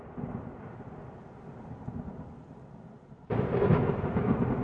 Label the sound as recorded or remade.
recorded